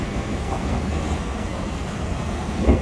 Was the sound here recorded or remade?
remade